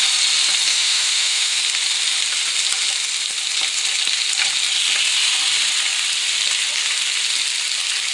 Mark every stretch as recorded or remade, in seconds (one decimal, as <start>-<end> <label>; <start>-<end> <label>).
0.0-0.7 recorded; 0.7-1.6 remade; 1.6-8.1 recorded